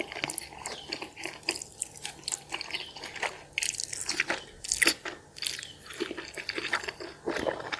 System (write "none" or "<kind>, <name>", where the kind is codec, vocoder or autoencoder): none